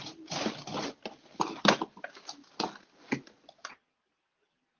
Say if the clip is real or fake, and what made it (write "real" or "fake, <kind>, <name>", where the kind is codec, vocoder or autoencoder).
real